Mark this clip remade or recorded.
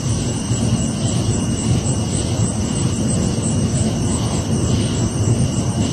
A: remade